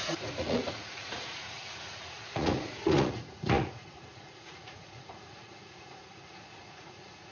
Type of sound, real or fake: fake